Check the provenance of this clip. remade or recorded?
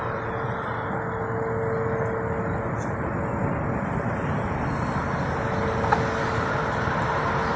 recorded